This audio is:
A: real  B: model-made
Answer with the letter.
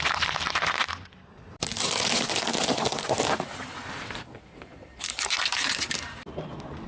A